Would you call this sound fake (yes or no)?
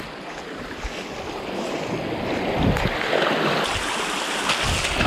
no